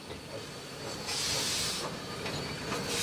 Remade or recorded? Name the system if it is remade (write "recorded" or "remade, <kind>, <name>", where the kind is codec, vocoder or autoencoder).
recorded